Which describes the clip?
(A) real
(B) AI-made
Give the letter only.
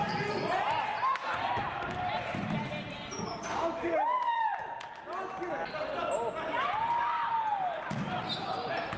A